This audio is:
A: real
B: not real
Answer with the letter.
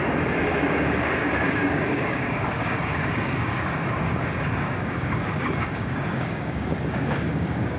B